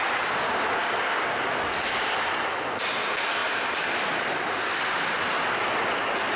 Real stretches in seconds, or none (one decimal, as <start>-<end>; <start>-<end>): 0.0-0.8; 1.3-6.4